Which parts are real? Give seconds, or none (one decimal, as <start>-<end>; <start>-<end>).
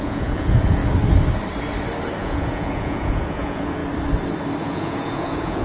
0.8-2.2; 3.8-4.6